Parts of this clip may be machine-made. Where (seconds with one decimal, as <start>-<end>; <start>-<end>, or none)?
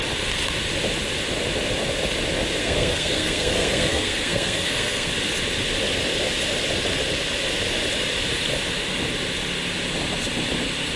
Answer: 2.6-5.1